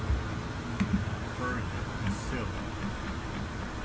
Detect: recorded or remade recorded